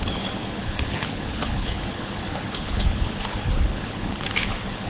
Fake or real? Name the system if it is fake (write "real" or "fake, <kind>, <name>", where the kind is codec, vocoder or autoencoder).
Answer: fake, codec, HILCodec